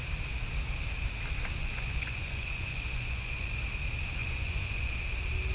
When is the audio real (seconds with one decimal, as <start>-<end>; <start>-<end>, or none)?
0.0-1.6; 3.6-4.2; 5.0-5.5